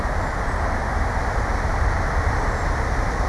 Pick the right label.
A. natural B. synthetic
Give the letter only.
A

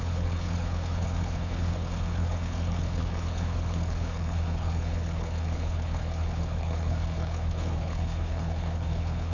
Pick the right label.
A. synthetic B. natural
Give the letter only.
A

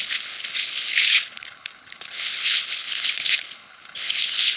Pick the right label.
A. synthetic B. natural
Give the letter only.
A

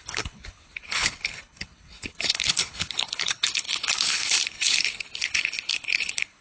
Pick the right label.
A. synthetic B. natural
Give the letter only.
A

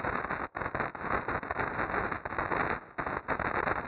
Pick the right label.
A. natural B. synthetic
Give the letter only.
A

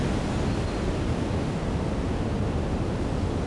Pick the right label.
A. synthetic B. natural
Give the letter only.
B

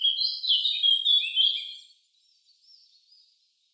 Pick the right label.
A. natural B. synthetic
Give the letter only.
A